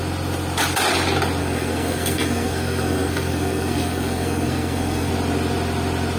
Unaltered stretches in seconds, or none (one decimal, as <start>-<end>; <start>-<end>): 0.0-1.4; 5.1-6.2

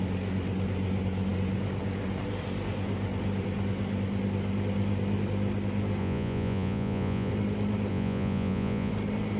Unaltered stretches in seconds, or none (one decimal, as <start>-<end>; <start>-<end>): 0.0-6.0; 7.3-7.9; 8.9-9.4

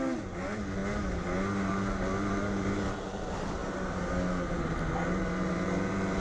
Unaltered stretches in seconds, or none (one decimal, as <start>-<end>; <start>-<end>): 0.8-1.7

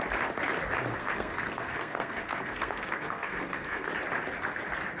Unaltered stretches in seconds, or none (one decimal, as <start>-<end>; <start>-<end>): 0.0-0.9; 3.9-5.0